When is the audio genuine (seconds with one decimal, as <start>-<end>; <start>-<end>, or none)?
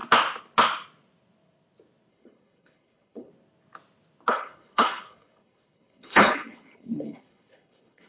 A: 0.0-2.1; 3.3-4.3